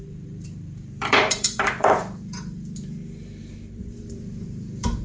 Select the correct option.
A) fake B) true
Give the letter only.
A